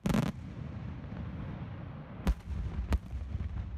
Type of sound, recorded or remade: recorded